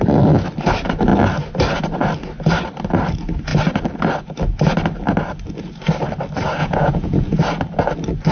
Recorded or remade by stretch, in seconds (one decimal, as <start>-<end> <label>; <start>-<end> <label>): 0.0-6.6 recorded; 6.6-7.4 remade; 7.4-8.3 recorded